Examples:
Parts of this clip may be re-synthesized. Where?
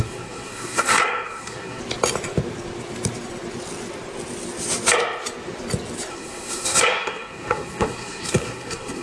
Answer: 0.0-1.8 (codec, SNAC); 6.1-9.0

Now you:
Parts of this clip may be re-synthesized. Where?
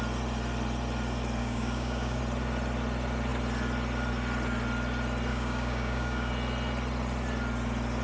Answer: 1.4-2.2 (codec, DAC); 5.3-6.3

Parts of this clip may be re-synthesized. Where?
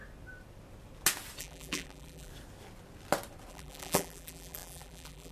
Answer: 1.4-2.3 (vocoder, BigVGAN v2); 3.5-5.3